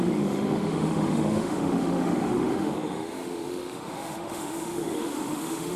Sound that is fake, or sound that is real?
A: fake